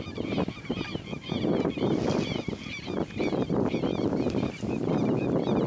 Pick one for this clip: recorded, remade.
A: recorded